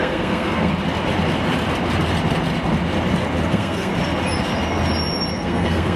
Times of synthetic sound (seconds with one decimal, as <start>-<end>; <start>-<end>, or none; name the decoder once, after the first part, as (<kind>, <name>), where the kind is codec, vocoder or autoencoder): 0.0-0.7 (codec, SNAC); 3.5-3.9; 5.3-6.0